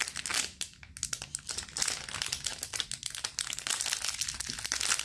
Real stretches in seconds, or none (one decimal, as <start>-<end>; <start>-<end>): 0.0-5.0